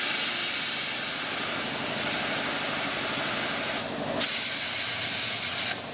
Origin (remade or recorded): recorded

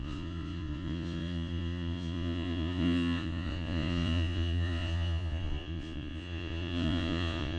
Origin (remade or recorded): remade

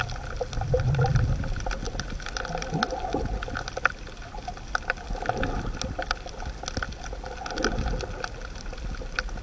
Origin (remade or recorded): recorded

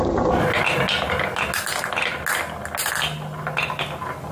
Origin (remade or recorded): recorded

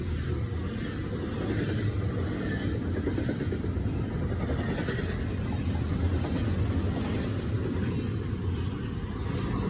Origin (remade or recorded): recorded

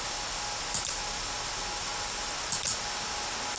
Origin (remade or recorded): recorded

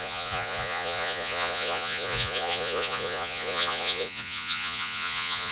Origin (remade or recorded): remade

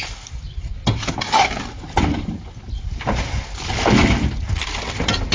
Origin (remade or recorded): recorded